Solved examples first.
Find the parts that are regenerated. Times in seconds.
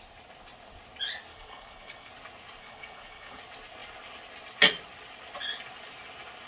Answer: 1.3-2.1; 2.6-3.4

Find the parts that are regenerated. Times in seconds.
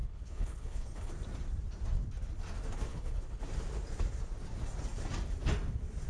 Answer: 0.0-1.1; 2.9-3.4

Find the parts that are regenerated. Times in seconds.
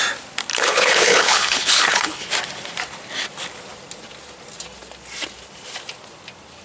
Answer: 0.5-2.3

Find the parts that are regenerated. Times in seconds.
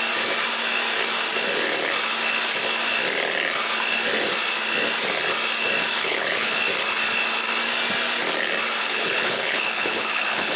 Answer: 5.9-6.6; 8.8-10.6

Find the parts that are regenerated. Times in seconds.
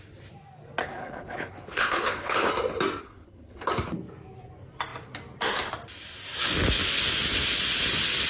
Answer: 0.8-2.5; 3.0-3.7